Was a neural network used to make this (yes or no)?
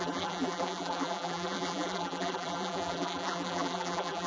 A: yes